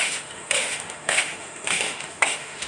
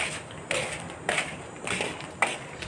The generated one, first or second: first